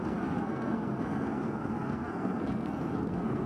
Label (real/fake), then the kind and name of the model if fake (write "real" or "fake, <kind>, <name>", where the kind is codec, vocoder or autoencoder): fake, codec, SNAC